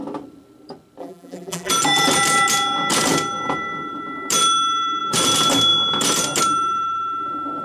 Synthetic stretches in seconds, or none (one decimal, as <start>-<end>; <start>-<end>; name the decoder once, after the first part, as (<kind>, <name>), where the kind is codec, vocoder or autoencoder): 1.0-1.7 (vocoder, BigVGAN v2)